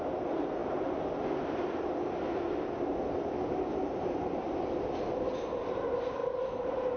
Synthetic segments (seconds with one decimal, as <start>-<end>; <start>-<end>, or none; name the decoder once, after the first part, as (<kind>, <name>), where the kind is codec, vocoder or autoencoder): none